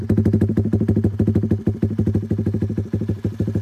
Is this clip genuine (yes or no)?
yes